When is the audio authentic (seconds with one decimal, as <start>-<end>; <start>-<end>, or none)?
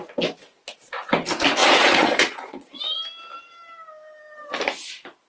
0.0-1.6; 2.8-5.3